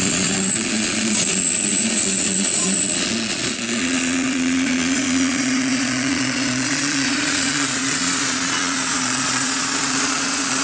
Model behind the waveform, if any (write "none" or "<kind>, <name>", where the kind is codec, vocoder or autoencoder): vocoder, Vocos